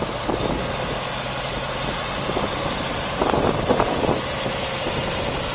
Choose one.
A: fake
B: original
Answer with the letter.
B